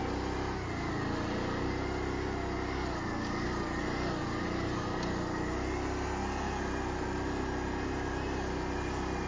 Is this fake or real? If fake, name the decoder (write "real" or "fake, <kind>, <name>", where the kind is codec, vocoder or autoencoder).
real